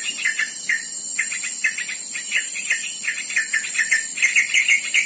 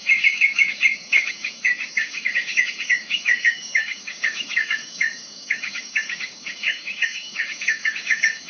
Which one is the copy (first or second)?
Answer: second